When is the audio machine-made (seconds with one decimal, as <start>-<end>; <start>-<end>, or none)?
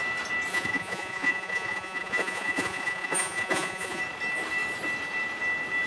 0.5-4.0